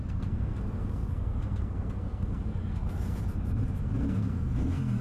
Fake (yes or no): yes